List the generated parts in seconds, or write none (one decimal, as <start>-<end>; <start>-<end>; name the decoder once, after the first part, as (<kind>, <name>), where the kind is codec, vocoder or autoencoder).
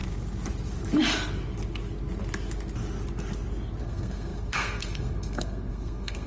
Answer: 3.8-6.3 (codec, SNAC)